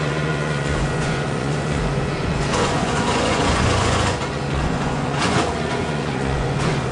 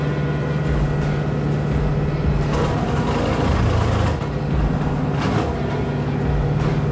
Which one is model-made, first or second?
first